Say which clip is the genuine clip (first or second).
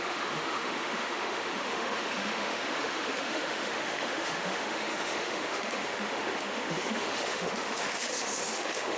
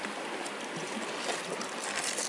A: second